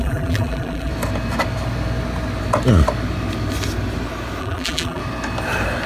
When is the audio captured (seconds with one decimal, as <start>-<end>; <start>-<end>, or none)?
0.9-4.4; 5.0-5.9